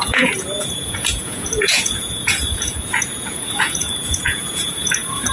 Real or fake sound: fake